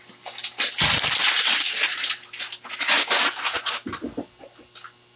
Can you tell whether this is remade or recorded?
recorded